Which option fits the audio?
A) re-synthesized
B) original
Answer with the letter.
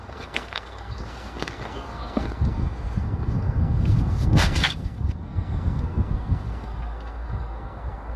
A